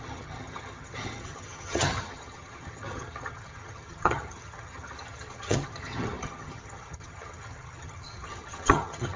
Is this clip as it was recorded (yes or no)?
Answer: no